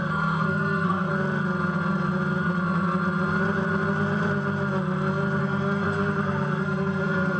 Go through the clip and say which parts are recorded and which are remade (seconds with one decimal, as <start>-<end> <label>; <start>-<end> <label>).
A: 0.0-1.1 remade; 1.1-5.4 recorded; 5.4-7.4 remade